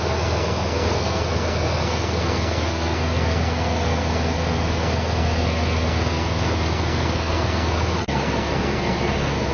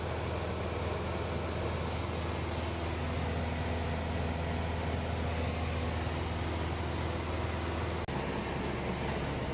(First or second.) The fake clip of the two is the first